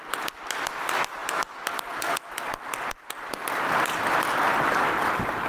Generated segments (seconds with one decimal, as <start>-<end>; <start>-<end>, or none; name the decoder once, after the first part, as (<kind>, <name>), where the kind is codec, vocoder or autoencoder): none